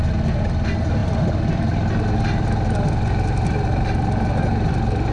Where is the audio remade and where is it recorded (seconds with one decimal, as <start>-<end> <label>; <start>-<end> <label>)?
0.0-5.1 recorded